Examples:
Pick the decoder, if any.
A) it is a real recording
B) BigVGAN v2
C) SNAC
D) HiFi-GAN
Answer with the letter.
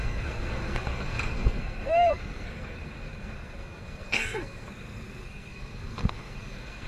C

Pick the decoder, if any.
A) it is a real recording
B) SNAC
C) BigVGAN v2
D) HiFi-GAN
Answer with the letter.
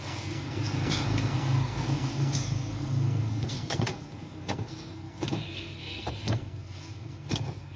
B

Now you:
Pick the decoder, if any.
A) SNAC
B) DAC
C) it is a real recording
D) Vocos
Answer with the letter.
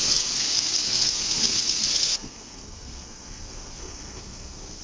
A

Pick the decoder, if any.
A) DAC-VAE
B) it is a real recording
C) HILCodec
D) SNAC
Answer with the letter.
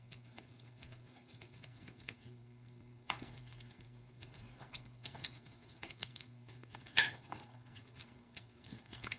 D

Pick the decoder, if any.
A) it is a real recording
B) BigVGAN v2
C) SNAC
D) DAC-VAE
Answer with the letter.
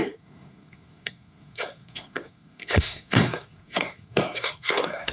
C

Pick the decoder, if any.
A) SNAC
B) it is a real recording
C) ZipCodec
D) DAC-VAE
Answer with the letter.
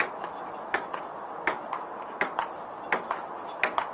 B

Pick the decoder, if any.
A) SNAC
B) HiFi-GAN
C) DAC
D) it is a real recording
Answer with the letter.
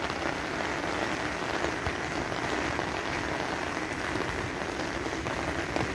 D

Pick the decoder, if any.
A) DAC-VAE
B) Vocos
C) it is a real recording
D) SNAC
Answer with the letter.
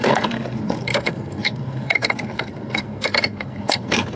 D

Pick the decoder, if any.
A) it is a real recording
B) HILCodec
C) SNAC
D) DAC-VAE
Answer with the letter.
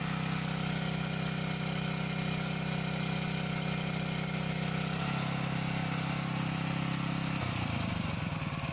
A